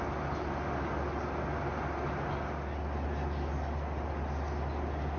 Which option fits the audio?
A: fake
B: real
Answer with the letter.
B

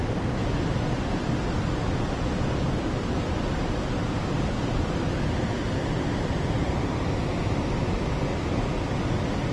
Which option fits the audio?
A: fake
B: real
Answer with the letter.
B